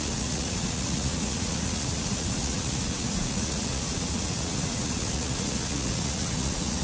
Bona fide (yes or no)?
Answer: no